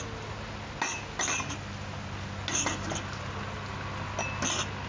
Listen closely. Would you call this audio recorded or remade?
recorded